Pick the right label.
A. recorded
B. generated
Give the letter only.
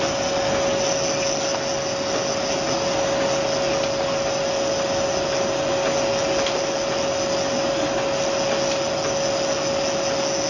A